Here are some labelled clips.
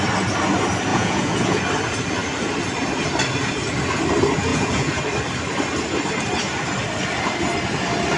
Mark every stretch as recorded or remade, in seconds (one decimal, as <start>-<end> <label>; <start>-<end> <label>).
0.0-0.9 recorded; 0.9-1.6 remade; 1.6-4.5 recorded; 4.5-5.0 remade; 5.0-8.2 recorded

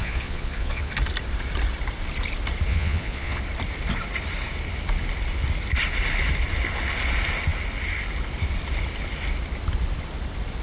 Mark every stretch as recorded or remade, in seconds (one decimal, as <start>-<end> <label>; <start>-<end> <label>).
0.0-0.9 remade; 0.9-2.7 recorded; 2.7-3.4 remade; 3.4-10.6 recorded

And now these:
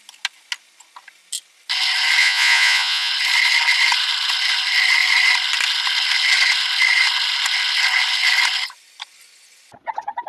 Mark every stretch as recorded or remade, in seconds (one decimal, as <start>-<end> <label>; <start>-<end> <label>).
0.0-2.2 recorded; 2.2-3.1 remade; 3.1-10.3 recorded